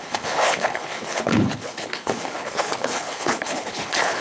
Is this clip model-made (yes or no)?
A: yes